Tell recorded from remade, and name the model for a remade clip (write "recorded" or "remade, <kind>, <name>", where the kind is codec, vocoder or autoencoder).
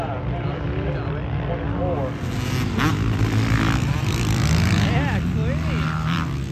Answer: recorded